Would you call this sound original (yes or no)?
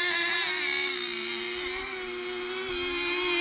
yes